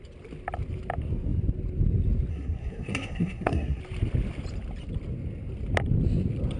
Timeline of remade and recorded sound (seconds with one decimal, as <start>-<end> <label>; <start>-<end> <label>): 0.0-2.3 recorded; 2.3-3.8 remade; 3.8-6.6 recorded